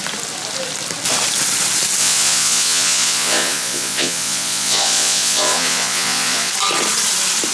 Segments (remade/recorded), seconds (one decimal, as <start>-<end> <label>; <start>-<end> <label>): 0.0-2.0 recorded; 2.0-6.5 remade; 6.5-7.5 recorded